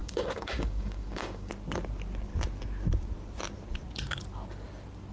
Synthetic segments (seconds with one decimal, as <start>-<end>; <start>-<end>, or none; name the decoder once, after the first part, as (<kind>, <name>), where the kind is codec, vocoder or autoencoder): 0.0-1.5 (codec, DAC)